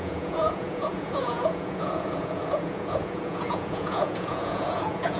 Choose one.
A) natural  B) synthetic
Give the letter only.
B